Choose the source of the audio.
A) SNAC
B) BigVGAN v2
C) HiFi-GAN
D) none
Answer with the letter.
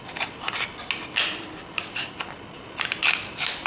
D